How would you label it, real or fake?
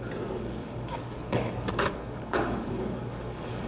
fake